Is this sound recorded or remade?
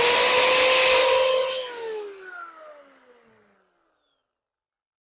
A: recorded